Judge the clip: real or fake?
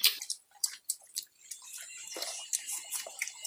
fake